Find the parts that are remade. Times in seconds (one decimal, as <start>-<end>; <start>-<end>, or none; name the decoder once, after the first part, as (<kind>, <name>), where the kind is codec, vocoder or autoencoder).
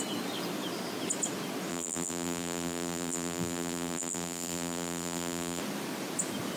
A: 1.7-5.6 (vocoder, BigVGAN v2)